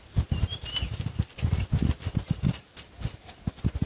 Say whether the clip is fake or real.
real